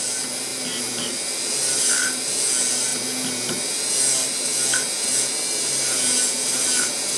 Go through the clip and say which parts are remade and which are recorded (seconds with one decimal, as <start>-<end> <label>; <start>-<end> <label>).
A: 0.0-7.2 recorded